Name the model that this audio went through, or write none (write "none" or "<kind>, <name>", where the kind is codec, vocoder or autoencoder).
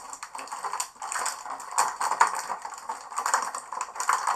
none